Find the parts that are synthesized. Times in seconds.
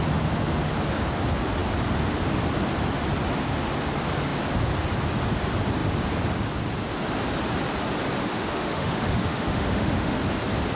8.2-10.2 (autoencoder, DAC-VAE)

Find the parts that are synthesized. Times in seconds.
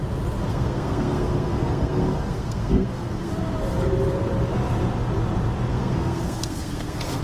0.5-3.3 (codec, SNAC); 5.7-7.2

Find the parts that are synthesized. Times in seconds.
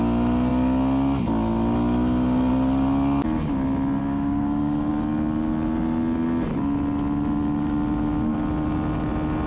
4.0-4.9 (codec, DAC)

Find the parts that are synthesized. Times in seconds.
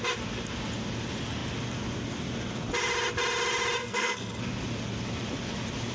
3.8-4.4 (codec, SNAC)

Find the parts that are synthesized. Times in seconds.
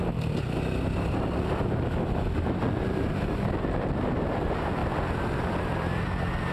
none